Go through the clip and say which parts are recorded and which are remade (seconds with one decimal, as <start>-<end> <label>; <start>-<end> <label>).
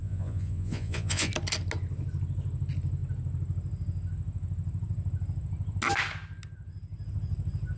0.0-1.3 remade; 1.3-7.8 recorded